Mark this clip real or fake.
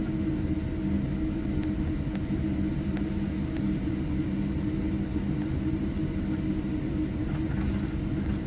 real